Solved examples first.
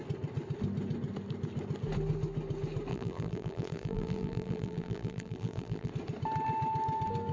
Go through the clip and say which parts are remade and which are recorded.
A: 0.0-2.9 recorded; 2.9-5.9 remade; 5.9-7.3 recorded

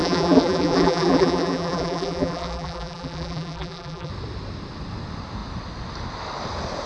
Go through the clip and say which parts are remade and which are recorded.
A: 0.0-4.1 remade; 4.1-6.9 recorded

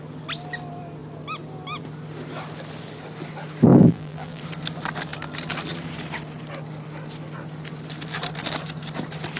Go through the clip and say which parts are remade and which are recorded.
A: 0.0-3.7 recorded; 3.7-4.4 remade; 4.4-9.4 recorded